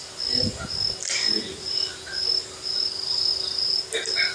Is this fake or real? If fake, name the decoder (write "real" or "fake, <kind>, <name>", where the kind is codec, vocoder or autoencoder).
real